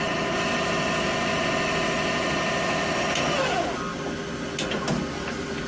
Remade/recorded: recorded